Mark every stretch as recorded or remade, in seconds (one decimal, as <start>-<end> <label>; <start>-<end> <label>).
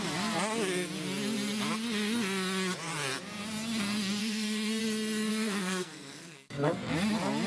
0.0-4.2 recorded; 4.2-4.8 remade; 4.8-5.3 recorded; 5.3-6.9 remade; 6.9-7.5 recorded